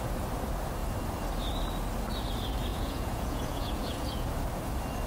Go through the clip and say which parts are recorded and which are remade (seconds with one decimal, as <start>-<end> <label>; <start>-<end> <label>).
0.0-2.7 recorded; 2.7-4.3 remade; 4.3-5.1 recorded